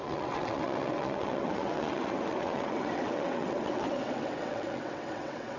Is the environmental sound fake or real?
fake